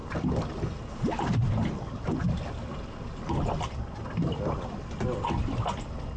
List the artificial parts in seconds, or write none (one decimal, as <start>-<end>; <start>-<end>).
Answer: none